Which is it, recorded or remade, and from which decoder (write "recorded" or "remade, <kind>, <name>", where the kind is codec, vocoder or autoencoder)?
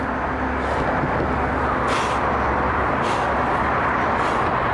recorded